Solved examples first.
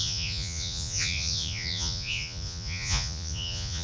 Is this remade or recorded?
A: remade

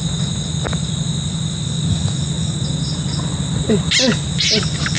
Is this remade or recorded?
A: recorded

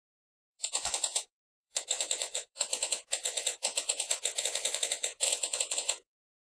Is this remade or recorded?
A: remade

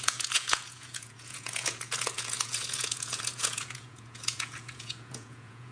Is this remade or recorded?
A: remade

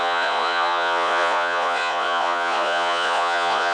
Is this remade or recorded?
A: remade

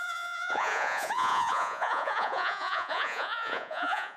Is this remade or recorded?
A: remade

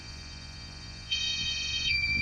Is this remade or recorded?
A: remade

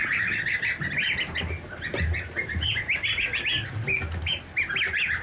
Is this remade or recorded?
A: recorded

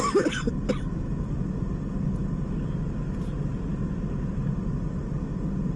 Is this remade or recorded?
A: recorded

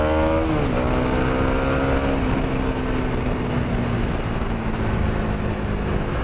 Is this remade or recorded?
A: recorded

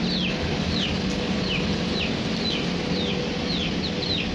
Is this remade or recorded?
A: recorded